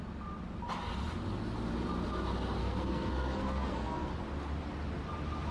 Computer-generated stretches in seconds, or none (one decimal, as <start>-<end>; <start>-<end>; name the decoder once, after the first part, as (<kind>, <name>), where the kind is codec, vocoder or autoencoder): 2.6-4.1 (codec, SNAC)